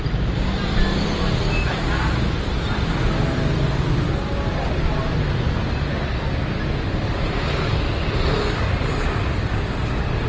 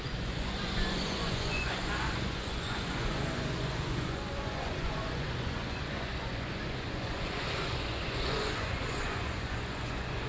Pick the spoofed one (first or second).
second